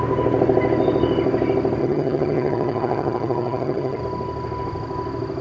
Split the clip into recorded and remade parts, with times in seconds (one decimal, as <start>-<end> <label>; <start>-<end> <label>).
0.0-1.8 recorded; 1.8-4.0 remade; 4.0-5.4 recorded